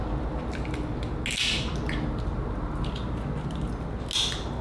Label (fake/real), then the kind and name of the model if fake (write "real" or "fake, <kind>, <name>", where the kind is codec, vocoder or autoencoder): real